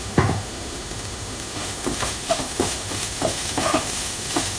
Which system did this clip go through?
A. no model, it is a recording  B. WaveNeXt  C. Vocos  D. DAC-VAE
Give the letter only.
D